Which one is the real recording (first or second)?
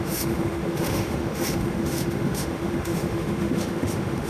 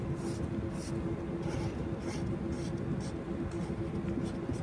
second